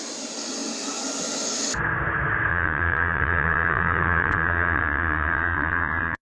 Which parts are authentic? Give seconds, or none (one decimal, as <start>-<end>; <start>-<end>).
0.0-2.5